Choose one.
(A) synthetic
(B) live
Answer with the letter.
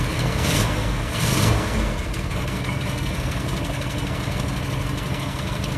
A